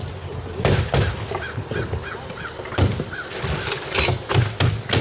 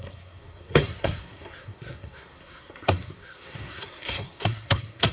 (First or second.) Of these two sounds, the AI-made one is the second